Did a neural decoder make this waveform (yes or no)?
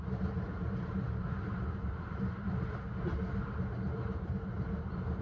yes